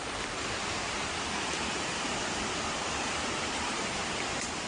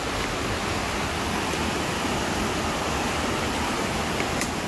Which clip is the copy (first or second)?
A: first